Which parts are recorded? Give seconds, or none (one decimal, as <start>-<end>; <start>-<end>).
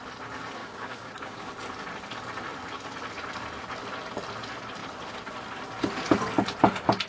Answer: 0.0-0.6; 1.5-7.1